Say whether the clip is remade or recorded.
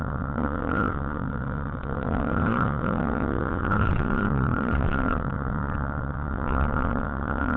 remade